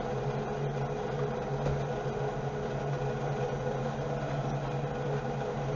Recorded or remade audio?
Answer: recorded